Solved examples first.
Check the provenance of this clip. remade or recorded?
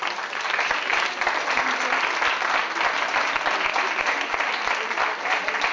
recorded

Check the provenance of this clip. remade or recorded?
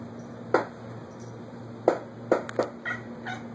recorded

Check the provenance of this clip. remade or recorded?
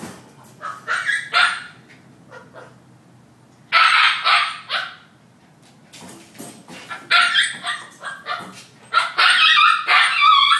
recorded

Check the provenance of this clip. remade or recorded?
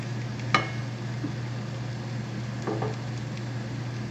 recorded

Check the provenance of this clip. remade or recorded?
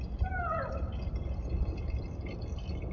recorded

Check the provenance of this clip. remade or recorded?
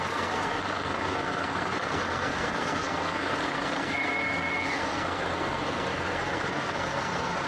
remade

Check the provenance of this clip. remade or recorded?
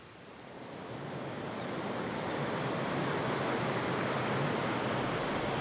recorded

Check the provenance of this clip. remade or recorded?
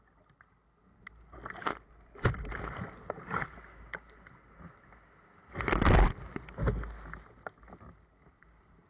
recorded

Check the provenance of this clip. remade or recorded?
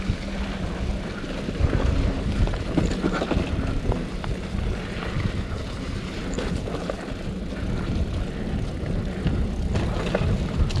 recorded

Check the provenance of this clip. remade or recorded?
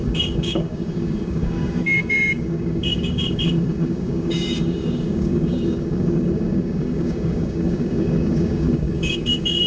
remade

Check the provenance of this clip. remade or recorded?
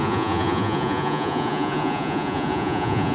remade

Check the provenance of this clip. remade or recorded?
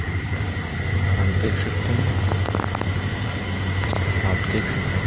remade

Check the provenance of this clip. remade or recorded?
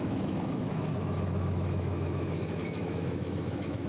remade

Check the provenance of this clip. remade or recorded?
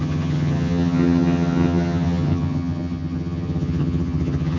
remade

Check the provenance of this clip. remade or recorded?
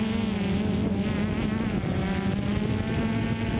recorded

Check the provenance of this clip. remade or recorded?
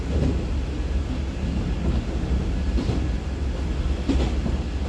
recorded